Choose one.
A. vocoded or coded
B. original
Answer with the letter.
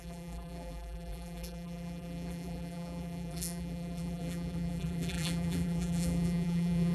A